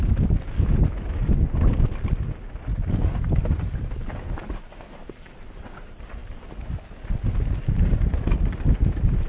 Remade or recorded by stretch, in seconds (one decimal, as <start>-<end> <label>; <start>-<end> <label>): 0.0-9.3 recorded